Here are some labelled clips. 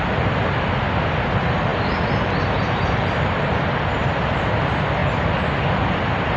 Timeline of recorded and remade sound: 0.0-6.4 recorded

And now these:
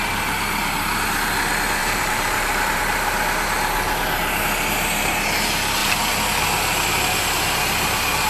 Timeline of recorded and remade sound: 0.0-1.8 recorded; 1.8-2.8 remade; 2.8-8.3 recorded